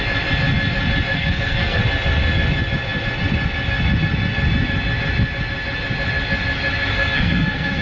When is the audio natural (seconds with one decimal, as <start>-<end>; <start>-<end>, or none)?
0.0-1.1; 1.8-6.9